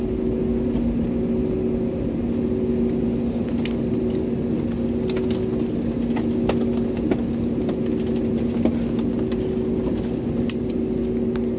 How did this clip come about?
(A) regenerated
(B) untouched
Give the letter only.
B